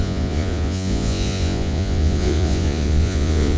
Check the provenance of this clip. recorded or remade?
remade